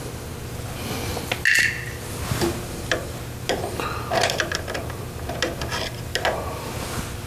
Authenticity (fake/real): real